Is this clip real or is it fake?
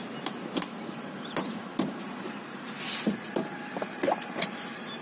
real